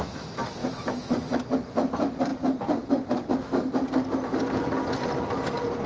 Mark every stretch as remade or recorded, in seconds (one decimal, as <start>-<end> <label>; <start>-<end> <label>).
0.0-0.6 recorded; 0.6-1.4 remade; 1.4-5.9 recorded